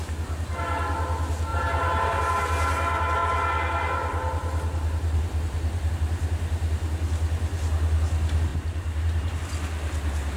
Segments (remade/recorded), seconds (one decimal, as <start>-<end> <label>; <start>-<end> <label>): 0.0-1.5 recorded; 1.5-2.2 remade; 2.2-8.5 recorded; 8.5-9.3 remade; 9.3-10.4 recorded